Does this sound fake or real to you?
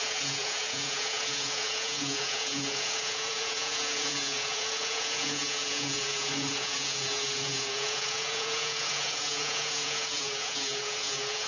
fake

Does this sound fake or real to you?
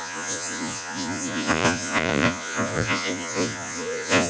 fake